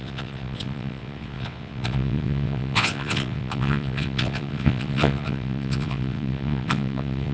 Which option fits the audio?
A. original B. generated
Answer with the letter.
B